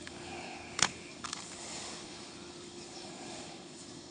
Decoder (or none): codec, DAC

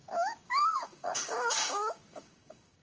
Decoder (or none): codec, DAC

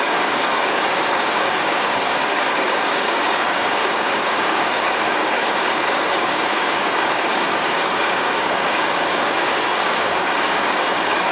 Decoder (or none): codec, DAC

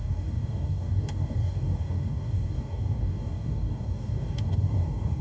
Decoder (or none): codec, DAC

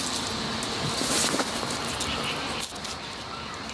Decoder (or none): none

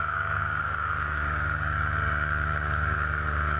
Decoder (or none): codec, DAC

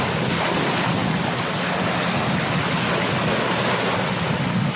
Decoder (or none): none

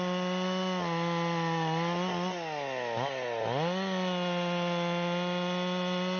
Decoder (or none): none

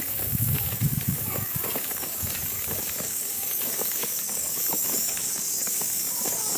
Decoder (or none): codec, DAC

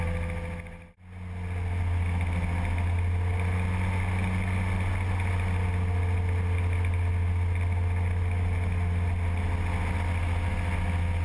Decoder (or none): none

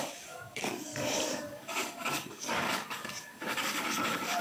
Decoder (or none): codec, DAC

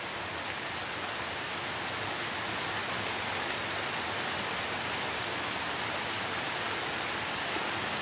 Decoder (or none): none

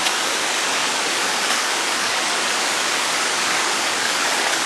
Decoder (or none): codec, DAC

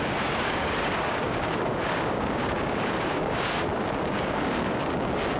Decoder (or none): codec, DAC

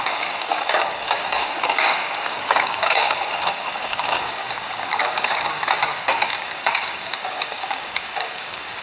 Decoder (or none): codec, DAC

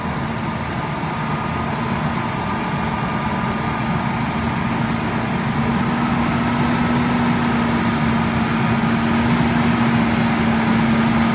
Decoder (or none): none